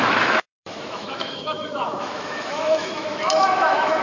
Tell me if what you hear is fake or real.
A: fake